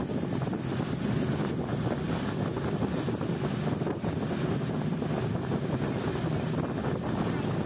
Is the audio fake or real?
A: real